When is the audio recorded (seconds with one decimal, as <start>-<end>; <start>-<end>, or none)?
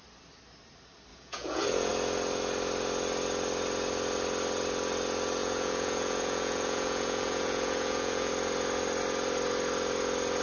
0.0-1.1; 1.9-5.4; 8.3-10.4